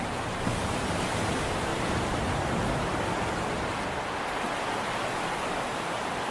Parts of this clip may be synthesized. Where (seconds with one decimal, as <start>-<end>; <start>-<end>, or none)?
0.0-1.7; 5.5-6.3